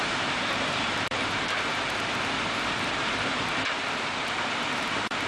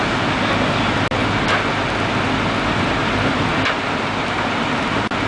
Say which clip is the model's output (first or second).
first